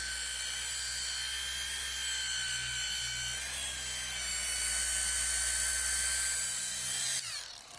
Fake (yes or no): no